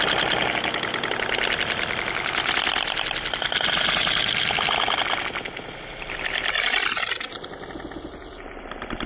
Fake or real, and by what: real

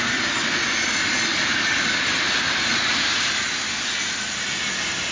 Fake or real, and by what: real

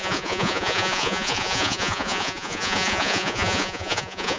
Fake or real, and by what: fake, vocoder, Vocos